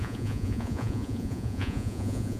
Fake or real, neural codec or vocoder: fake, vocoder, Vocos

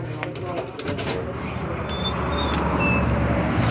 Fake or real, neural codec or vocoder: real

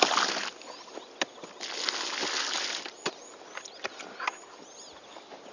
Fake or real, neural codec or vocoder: real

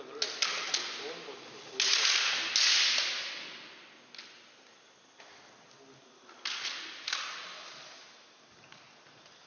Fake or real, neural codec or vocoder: real